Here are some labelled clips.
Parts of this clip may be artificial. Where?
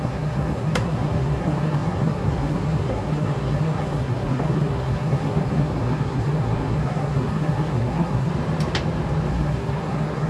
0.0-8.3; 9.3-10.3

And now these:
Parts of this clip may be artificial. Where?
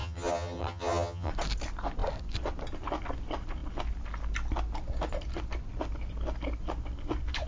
0.0-1.3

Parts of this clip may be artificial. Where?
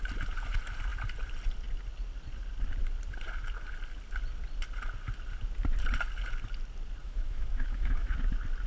7.0-8.1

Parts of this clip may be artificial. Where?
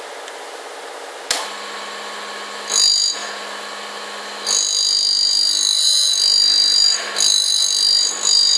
none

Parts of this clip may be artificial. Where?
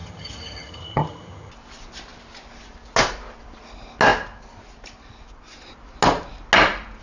0.0-1.5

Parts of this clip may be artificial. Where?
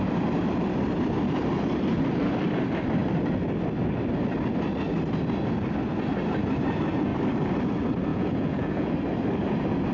8.1-8.9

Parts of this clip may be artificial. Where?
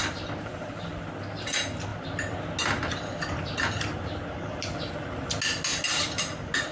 none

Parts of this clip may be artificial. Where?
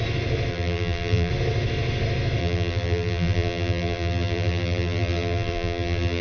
0.5-1.3; 2.4-6.2